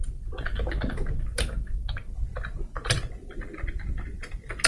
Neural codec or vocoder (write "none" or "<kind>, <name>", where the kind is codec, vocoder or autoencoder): none